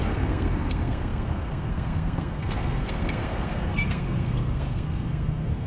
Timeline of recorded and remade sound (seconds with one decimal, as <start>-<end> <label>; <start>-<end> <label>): 0.0-5.7 remade